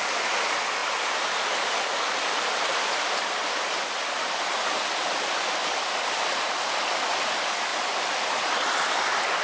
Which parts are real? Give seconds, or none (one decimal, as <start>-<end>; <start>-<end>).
0.0-9.4

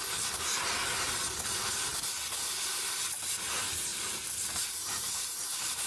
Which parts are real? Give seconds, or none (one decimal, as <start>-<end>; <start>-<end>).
0.0-3.9

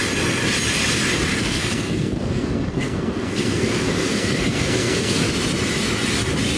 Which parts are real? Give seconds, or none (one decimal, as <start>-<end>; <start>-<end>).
0.0-1.3; 5.3-6.6

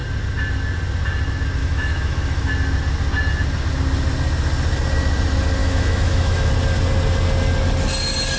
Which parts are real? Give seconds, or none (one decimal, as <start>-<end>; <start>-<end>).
0.0-1.6; 2.5-5.6; 6.5-8.4